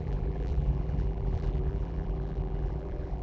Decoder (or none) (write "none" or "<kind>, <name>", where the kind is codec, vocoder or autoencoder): vocoder, BigVGAN v2